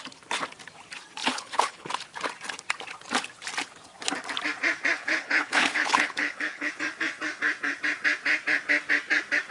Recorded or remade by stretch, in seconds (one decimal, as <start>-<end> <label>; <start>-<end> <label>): 0.0-1.2 recorded; 1.2-1.9 remade; 1.9-5.0 recorded; 5.0-6.7 remade; 6.7-9.5 recorded